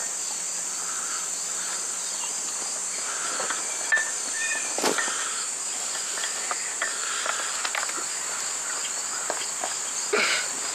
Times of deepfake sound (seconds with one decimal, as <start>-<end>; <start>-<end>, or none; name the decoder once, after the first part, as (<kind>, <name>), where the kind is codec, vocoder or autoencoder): 0.0-2.3 (vocoder, BigVGAN v2); 9.0-10.7